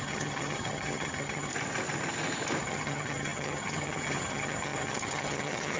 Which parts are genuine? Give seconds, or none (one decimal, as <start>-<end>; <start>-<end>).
1.5-2.6